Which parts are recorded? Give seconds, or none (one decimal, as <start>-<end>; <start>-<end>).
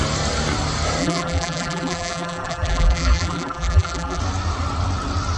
0.0-1.0; 4.2-5.4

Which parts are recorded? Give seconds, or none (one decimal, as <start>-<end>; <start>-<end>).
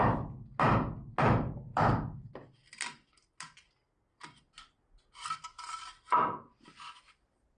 0.0-1.7; 3.1-5.5; 6.9-7.6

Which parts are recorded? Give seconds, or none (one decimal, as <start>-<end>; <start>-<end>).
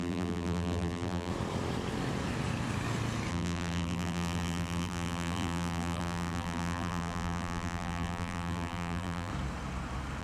1.3-3.3; 9.3-10.2